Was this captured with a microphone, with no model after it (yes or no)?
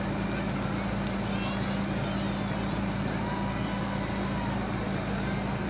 yes